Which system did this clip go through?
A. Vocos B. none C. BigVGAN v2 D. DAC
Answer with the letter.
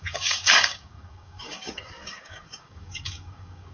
D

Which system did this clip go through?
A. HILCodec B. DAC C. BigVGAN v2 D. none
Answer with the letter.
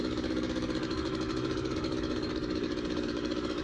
B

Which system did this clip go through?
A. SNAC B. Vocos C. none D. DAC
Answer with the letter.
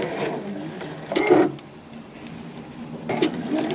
C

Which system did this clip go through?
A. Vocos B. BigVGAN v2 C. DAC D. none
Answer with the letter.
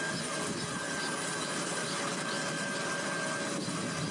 D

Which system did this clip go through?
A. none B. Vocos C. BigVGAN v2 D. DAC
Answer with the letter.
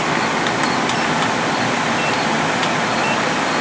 A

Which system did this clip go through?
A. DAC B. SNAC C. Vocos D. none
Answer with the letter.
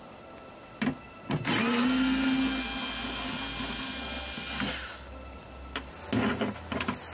D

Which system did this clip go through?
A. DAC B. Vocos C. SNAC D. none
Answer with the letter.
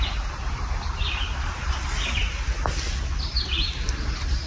D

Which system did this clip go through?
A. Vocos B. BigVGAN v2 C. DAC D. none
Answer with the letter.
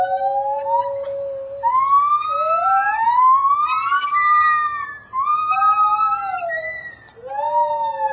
D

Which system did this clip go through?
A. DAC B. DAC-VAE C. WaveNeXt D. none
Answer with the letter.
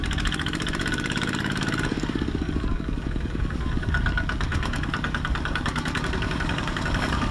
A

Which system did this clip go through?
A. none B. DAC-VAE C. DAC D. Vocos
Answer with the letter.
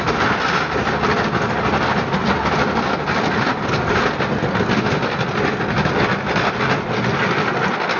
A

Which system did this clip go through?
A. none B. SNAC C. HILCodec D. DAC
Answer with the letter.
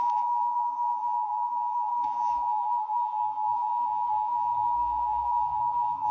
D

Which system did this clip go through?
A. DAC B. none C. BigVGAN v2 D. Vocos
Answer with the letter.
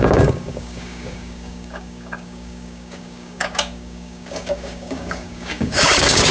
A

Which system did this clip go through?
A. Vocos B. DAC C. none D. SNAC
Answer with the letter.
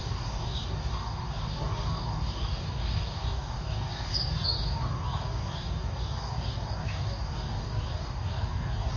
B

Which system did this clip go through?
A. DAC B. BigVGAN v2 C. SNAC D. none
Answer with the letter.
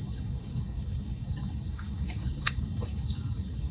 A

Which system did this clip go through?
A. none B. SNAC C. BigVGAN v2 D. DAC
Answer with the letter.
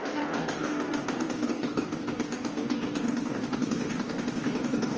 D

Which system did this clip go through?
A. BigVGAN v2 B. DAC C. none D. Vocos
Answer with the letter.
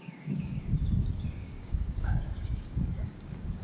B